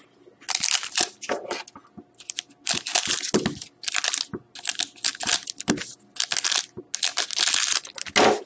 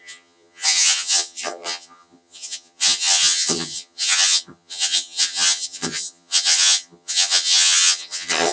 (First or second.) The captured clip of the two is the first